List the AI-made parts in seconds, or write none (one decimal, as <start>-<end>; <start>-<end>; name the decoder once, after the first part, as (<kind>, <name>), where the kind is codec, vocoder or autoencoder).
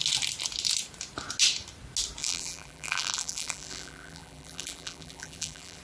2.2-5.8 (vocoder, BigVGAN v2)